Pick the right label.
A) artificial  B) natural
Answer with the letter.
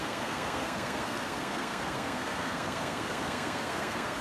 A